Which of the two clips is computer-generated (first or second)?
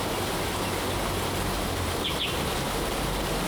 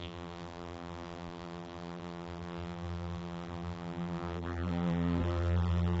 second